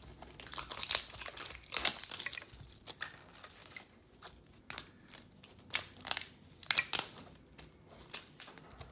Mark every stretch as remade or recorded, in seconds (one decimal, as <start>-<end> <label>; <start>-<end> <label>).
0.0-8.9 recorded